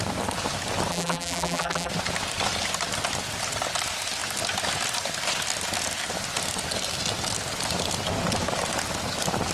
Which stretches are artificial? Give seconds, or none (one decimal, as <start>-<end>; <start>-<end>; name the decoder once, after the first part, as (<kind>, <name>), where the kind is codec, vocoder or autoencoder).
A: 0.9-1.9 (vocoder, BigVGAN v2)

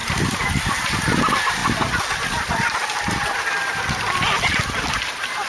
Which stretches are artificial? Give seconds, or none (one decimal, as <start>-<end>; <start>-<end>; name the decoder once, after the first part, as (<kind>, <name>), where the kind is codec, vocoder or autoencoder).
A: none

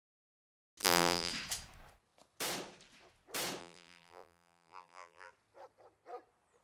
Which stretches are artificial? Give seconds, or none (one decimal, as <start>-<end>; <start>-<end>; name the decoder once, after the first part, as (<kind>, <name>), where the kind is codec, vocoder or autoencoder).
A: 0.8-1.3 (vocoder, BigVGAN v2); 3.6-5.3

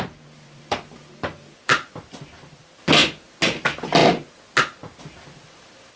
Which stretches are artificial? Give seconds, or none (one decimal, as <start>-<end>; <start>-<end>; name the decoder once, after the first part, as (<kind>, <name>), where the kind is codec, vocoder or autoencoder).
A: 0.0-3.0 (vocoder, BigVGAN v2); 3.6-4.0; 5.0-6.0

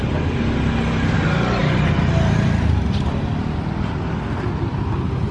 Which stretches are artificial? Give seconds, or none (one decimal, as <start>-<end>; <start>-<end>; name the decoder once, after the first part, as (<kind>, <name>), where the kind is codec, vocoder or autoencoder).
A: none

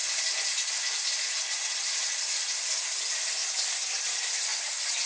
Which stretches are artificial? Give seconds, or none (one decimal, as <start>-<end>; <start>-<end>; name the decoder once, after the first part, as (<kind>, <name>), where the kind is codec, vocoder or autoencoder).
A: 0.0-5.1 (vocoder, BigVGAN v2)

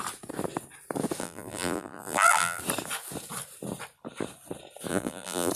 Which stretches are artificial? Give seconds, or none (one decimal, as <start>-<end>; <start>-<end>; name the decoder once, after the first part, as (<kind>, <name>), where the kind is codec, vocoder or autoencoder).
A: 1.2-2.6 (vocoder, BigVGAN v2); 4.9-5.5